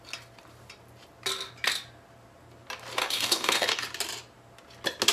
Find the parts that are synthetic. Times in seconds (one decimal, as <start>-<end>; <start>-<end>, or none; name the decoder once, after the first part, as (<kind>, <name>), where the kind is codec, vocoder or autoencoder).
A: 3.0-3.8 (codec, DAC)

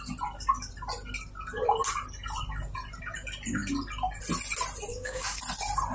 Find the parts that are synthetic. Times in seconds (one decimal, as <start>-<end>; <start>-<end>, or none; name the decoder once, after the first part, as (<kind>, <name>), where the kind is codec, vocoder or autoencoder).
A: 4.9-5.4 (codec, DAC)

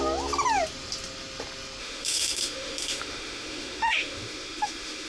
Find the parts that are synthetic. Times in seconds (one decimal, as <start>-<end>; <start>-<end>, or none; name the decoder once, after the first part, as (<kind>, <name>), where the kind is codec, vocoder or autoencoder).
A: 1.8-5.1 (autoencoder, DAC-VAE)

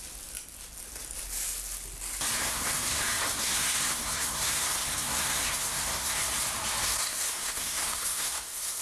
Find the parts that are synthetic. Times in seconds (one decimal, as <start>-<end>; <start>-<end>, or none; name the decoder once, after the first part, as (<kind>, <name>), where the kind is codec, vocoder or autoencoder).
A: 2.4-3.0 (codec, SNAC); 3.4-6.2; 6.8-8.8

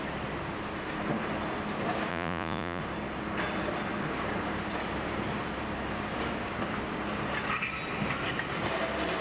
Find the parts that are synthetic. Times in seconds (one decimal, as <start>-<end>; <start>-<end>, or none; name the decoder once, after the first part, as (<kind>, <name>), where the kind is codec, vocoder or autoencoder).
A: 2.1-2.8 (vocoder, Vocos)

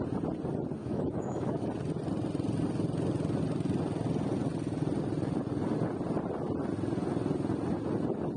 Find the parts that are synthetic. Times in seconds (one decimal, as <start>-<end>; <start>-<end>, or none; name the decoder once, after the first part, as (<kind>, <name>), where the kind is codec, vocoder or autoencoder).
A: 0.8-1.7 (autoencoder, DAC-VAE)